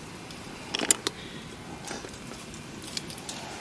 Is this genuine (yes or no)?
yes